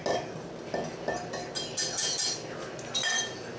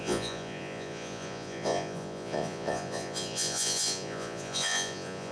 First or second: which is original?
first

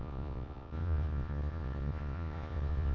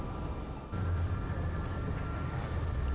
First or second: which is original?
second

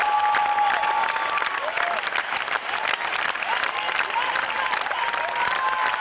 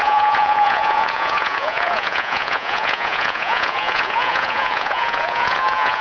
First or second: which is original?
first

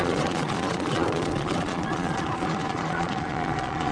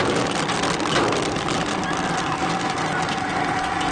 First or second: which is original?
second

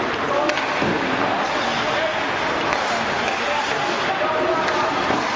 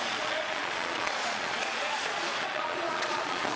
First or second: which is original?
first